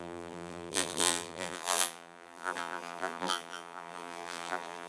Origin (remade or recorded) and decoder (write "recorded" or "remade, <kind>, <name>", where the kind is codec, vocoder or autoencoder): remade, vocoder, BigVGAN v2